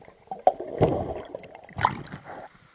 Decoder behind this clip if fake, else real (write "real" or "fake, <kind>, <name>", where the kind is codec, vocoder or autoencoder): real